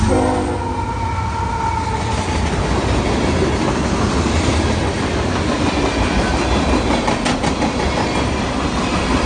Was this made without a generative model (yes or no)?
yes